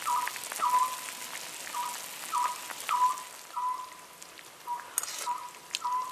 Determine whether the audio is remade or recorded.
recorded